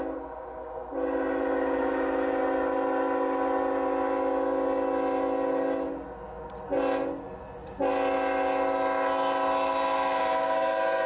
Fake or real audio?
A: real